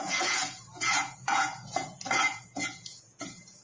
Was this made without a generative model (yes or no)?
no